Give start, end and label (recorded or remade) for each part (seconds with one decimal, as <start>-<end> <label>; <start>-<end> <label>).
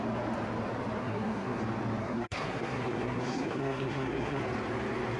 0.0-1.0 recorded; 1.0-1.6 remade; 1.6-2.0 recorded; 2.0-4.4 remade; 4.4-5.2 recorded